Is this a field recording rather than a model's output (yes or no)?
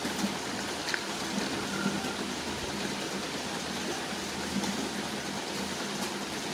yes